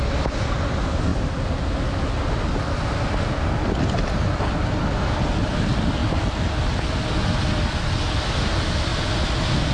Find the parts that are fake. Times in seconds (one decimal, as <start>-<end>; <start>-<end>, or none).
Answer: 0.0-1.1; 3.9-6.0; 7.7-8.9